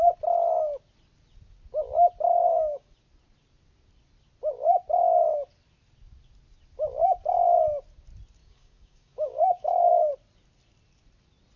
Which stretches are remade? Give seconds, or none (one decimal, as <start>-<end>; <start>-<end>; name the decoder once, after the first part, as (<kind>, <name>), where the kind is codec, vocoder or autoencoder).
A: 2.3-2.9 (codec, DAC); 8.4-10.1